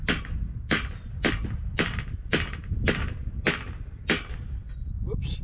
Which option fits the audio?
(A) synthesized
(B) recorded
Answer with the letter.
B